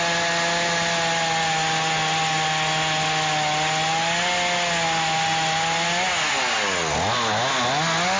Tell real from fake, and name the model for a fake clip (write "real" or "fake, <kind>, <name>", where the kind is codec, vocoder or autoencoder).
real